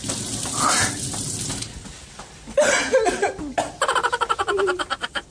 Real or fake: real